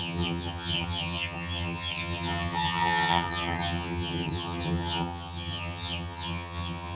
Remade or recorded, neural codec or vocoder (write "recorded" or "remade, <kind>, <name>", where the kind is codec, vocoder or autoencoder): remade, vocoder, HiFi-GAN